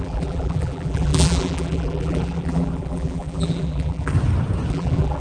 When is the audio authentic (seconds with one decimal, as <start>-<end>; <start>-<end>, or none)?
4.1-4.7